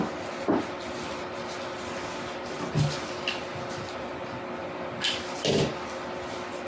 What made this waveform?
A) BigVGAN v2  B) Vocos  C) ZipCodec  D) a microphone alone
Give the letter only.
D